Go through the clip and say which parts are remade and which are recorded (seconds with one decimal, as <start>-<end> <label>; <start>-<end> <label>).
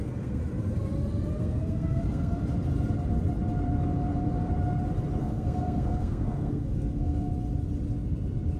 0.0-0.4 remade; 0.4-1.4 recorded; 1.4-2.4 remade; 2.4-5.2 recorded; 5.2-7.3 remade; 7.3-8.6 recorded